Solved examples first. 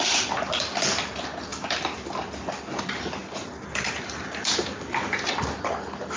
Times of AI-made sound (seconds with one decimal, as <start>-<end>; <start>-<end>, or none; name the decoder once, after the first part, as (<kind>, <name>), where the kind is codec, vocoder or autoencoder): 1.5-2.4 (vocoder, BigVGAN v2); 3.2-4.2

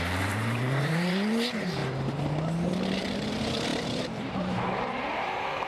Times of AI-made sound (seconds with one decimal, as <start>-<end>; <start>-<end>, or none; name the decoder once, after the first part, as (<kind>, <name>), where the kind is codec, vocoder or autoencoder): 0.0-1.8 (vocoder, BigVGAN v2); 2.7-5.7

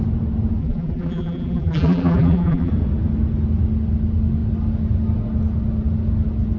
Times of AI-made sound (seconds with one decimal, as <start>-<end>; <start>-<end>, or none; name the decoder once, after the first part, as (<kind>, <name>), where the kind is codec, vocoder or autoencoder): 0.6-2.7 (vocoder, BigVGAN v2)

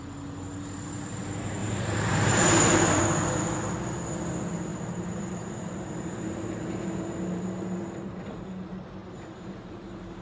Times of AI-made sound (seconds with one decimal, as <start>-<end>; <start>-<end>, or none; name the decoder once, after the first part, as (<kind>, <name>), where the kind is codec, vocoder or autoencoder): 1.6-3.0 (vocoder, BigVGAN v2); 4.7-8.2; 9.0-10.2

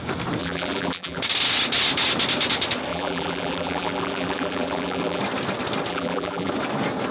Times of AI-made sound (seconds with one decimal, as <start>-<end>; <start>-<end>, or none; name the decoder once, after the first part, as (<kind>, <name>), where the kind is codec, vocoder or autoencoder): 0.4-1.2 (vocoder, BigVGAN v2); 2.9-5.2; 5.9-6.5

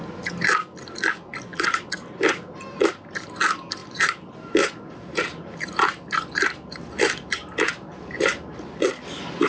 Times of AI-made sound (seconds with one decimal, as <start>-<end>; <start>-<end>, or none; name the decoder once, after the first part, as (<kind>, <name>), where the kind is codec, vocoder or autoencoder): 3.8-8.8 (vocoder, BigVGAN v2)

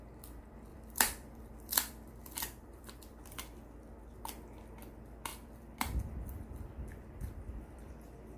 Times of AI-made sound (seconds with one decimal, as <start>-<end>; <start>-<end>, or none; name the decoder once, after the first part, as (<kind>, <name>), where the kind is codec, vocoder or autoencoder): 0.7-3.3 (vocoder, BigVGAN v2); 5.3-7.9

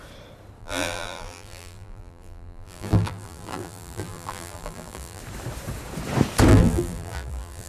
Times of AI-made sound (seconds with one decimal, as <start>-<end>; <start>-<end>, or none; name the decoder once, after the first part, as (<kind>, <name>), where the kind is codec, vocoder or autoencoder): 0.6-5.2 (vocoder, BigVGAN v2); 6.5-7.7